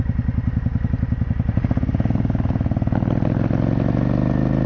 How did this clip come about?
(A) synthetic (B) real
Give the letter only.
B